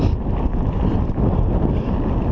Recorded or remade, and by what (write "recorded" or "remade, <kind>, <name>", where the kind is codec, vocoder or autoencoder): recorded